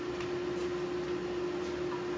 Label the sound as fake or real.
real